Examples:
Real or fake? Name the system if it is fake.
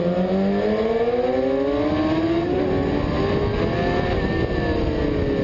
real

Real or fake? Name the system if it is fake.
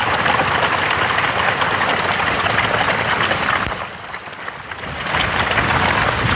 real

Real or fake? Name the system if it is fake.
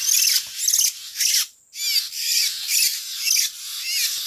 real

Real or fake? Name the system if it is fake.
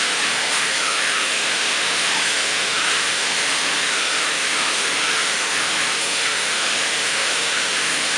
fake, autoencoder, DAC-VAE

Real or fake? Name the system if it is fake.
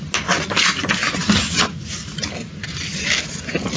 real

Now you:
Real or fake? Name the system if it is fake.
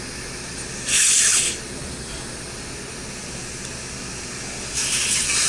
real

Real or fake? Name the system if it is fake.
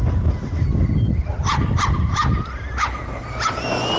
real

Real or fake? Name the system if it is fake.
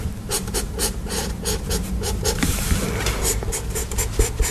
fake, vocoder, BigVGAN v2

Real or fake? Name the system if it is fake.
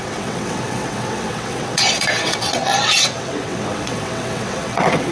fake, vocoder, WaveNeXt